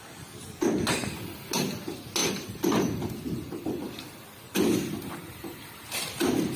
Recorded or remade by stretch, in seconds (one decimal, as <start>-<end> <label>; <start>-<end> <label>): 0.0-6.6 recorded